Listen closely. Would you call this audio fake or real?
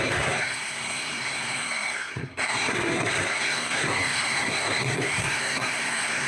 fake